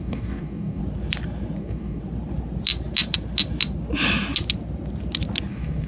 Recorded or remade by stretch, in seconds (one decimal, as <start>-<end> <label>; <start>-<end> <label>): 0.0-0.8 remade; 0.8-1.6 recorded; 1.6-2.0 remade; 2.0-5.5 recorded; 5.5-5.9 remade